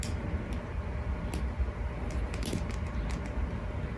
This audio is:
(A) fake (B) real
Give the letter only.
B